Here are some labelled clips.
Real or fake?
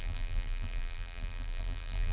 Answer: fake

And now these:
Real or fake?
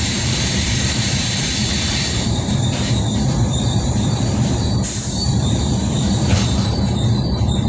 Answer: fake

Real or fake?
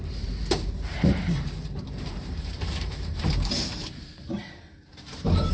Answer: fake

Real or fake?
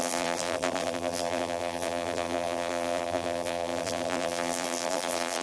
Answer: fake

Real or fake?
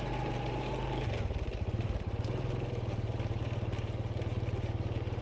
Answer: fake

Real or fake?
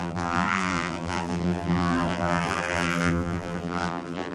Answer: fake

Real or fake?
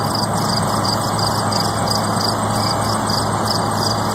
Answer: real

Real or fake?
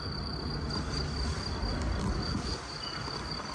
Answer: real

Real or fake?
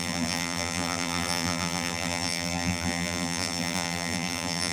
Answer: fake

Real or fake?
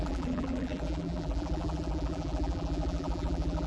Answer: fake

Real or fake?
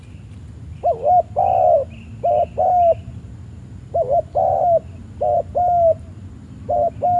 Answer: real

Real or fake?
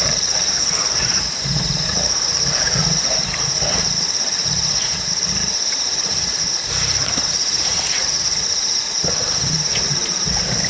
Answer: fake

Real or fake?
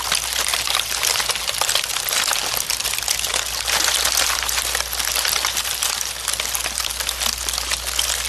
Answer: real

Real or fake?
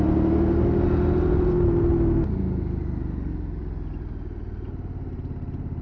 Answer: real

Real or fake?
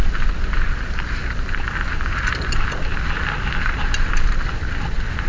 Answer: real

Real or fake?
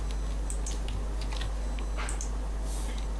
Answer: real